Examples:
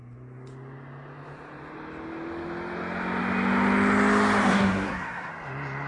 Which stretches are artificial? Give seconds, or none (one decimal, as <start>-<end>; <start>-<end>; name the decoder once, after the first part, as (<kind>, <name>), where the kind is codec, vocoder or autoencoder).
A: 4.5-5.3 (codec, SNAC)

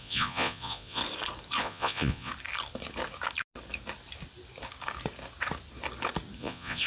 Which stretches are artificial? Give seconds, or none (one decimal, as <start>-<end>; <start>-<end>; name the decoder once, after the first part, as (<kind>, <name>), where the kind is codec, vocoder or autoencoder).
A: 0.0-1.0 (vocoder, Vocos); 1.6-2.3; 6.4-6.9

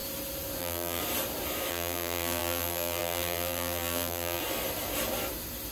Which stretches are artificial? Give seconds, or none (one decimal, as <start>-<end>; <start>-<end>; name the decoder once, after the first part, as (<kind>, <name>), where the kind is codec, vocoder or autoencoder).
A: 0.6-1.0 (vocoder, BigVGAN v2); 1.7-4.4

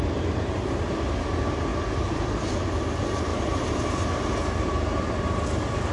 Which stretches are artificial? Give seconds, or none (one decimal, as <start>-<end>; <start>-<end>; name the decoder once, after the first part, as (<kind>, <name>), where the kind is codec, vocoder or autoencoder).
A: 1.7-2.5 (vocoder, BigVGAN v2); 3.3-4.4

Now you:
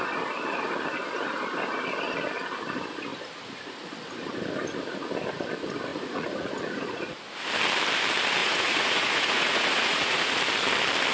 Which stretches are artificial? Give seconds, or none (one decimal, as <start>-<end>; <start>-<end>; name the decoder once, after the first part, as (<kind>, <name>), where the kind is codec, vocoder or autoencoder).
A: 5.9-7.2 (vocoder, Vocos); 8.4-10.4

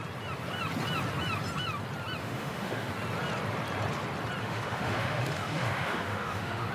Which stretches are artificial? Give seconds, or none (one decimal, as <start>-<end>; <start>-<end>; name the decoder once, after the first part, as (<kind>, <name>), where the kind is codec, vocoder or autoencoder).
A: 2.2-2.9 (autoencoder, DAC-VAE); 4.4-6.7